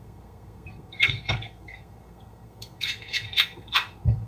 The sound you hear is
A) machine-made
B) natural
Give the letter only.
A